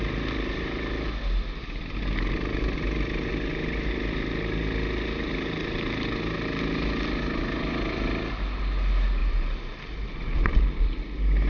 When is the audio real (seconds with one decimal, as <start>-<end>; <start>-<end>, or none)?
0.0-9.2; 11.0-11.5